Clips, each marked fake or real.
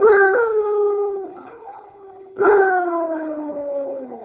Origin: fake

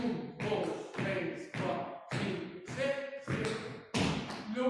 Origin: real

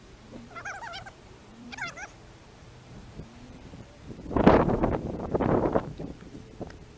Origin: fake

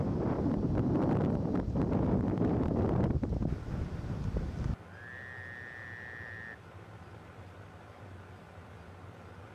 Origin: real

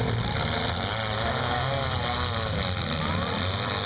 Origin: real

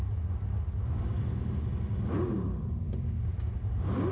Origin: real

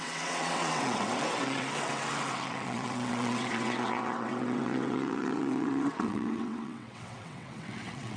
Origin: fake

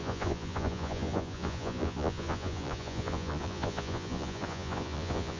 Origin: fake